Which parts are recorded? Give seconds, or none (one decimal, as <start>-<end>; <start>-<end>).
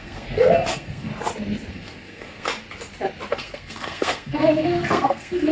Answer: 1.1-1.7; 2.5-3.3